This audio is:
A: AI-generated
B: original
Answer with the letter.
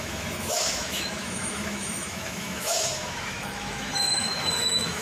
A